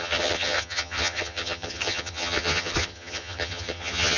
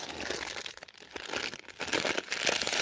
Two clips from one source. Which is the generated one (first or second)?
first